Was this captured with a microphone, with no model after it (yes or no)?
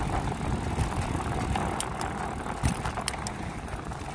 yes